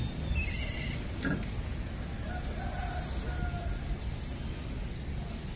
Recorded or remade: recorded